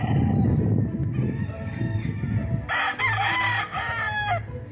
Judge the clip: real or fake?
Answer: real